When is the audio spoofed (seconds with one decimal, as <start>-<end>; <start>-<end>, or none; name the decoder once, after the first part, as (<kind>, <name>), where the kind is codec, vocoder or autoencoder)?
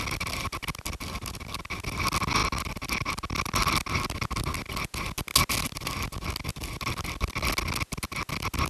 none